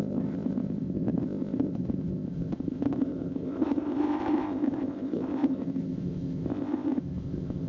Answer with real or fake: fake